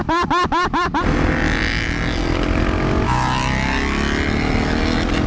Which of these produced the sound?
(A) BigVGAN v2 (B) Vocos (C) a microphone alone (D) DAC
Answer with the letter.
C